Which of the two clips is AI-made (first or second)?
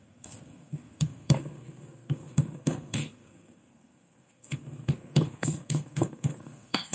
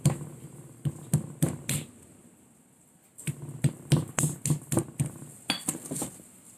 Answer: first